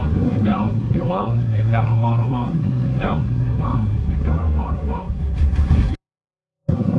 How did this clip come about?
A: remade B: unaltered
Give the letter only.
A